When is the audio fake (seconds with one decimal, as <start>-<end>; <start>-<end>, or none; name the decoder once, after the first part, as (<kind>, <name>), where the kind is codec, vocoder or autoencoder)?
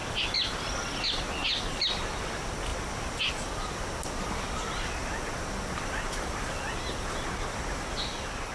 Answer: none